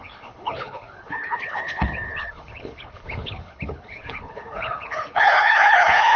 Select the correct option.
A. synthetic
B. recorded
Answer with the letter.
A